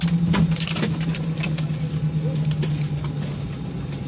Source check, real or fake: real